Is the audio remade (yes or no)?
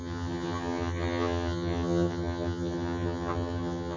yes